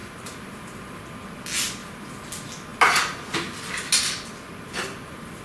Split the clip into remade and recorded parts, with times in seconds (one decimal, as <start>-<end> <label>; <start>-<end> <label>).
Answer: 0.0-1.0 remade; 1.0-1.8 recorded; 1.8-2.3 remade; 2.3-5.4 recorded